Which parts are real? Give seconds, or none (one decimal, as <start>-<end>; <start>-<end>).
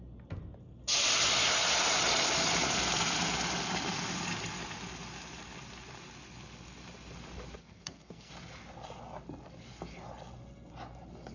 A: 0.0-7.6; 8.3-11.3